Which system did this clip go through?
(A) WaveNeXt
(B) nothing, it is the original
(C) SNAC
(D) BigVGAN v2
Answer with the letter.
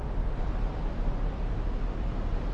D